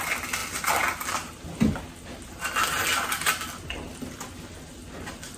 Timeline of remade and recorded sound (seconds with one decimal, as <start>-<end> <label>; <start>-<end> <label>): 0.0-5.4 recorded